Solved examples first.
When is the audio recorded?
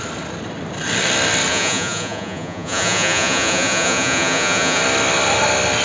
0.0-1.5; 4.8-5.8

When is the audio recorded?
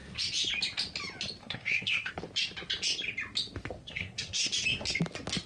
0.0-1.4; 2.1-3.8; 4.5-5.5